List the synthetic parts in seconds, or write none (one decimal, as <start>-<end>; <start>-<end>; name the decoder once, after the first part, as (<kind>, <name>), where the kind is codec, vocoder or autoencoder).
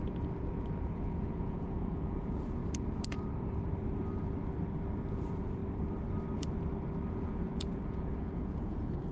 0.0-2.6 (vocoder, Vocos); 5.1-5.6; 7.1-9.1